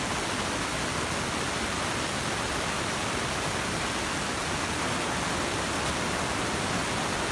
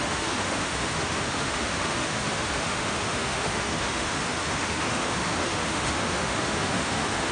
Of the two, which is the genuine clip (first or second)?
first